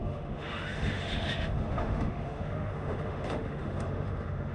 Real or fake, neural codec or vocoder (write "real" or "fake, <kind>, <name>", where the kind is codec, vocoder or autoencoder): fake, autoencoder, DAC-VAE